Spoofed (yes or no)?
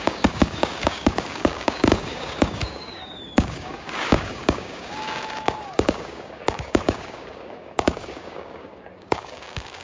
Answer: yes